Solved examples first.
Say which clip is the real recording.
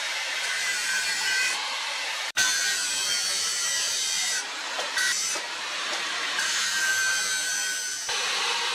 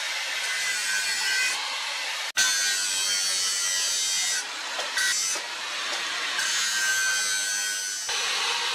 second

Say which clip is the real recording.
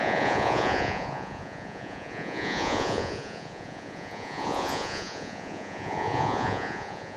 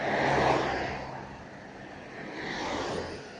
second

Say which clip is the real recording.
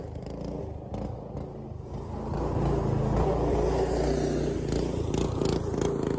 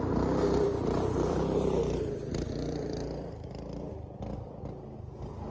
first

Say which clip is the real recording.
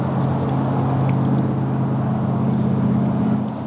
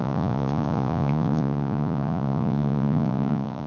first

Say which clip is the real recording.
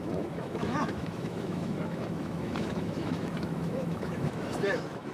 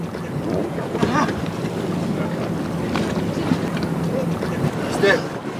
second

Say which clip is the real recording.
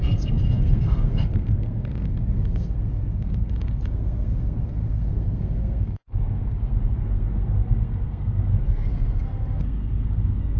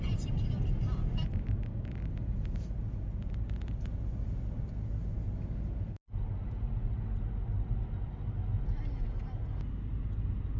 second